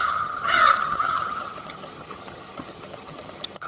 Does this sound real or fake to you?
fake